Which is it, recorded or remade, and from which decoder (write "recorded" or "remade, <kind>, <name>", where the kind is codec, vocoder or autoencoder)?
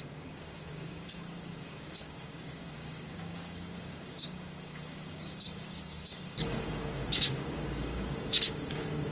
remade, codec, DAC